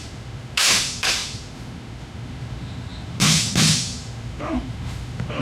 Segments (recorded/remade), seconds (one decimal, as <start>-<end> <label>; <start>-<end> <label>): 0.0-5.4 remade